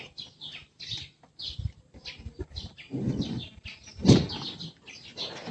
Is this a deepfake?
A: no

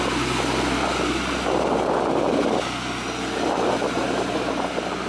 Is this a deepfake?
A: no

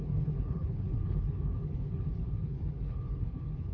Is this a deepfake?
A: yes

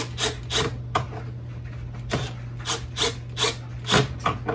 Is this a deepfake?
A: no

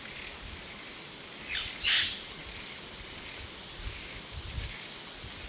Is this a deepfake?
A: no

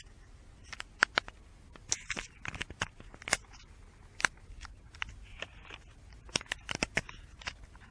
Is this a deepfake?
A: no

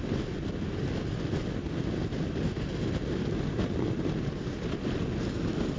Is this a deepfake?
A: no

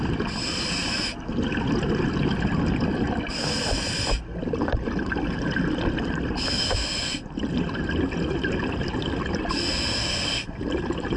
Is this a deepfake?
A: no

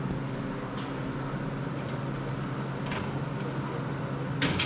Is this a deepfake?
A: no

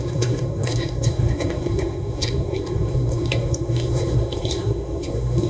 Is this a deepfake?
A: yes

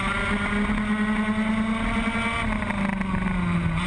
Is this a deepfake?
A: no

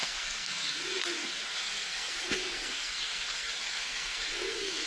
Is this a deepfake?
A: yes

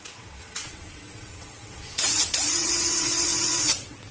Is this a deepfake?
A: yes